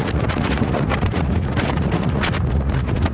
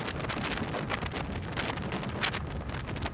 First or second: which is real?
second